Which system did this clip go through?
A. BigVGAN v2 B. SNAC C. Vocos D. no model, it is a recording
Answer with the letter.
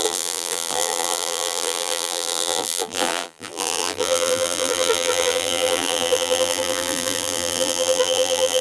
A